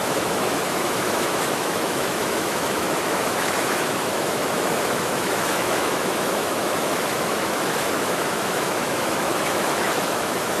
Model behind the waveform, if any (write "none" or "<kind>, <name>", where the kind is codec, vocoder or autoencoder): autoencoder, DAC-VAE